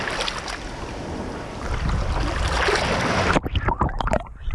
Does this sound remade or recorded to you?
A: recorded